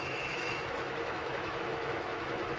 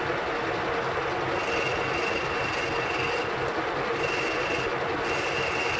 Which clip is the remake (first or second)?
first